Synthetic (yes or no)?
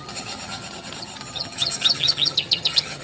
yes